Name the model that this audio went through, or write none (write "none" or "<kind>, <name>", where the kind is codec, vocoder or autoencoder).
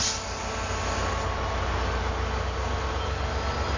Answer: none